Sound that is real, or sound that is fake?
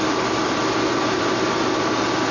fake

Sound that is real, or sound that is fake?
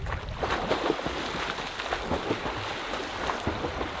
real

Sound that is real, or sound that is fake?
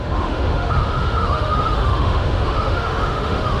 fake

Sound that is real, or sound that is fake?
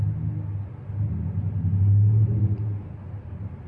real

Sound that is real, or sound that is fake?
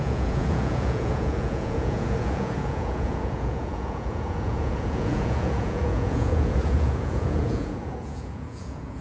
fake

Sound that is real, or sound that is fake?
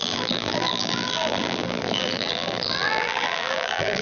fake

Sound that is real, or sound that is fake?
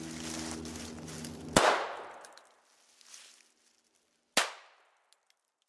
real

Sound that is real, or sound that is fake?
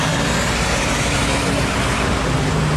real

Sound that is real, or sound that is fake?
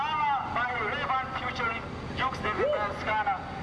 real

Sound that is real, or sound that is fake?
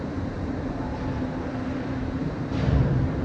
fake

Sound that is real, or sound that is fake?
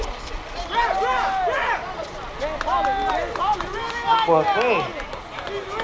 real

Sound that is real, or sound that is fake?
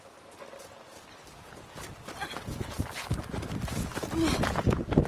real